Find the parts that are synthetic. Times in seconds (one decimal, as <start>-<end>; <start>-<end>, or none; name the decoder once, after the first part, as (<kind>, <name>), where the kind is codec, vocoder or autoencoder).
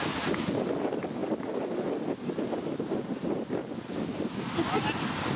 none